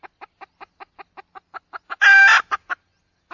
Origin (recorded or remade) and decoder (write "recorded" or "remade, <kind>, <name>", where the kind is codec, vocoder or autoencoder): recorded